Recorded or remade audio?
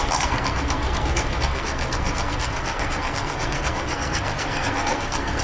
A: remade